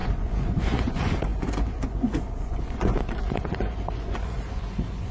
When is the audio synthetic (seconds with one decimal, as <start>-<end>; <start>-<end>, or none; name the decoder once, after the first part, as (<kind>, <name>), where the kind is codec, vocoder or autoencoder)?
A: 0.0-5.1 (vocoder, Vocos)